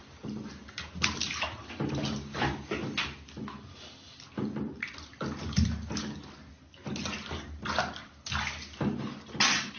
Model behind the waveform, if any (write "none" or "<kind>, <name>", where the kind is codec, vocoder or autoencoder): none